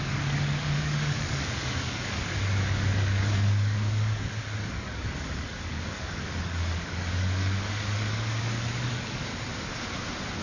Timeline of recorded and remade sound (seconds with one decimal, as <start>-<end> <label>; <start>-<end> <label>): 0.0-9.2 remade; 9.2-10.4 recorded